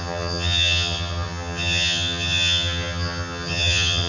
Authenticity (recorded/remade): remade